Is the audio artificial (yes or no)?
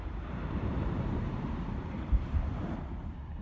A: yes